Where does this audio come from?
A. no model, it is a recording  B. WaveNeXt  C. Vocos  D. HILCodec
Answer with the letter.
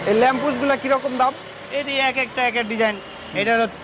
A